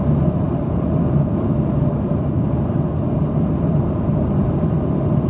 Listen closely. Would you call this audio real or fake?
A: fake